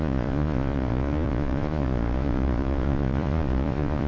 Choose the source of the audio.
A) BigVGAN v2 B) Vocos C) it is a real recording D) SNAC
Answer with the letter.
B